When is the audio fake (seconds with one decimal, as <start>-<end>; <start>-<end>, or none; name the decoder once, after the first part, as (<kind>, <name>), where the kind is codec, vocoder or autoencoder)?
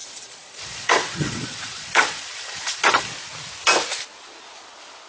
0.0-3.1 (vocoder, Vocos)